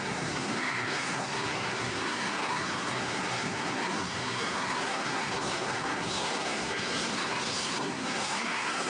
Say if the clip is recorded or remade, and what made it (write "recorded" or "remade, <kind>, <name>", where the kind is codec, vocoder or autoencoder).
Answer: remade, codec, SNAC